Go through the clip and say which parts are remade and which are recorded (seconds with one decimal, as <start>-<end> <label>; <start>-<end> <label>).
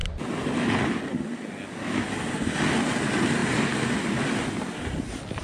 0.0-5.4 recorded